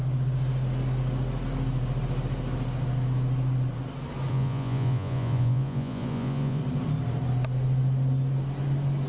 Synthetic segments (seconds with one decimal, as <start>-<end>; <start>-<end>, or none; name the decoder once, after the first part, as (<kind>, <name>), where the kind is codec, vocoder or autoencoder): 4.3-6.6 (vocoder, Vocos)